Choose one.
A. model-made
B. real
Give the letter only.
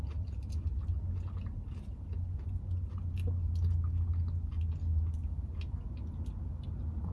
B